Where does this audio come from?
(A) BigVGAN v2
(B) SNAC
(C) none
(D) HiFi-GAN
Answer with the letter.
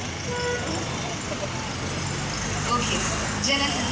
C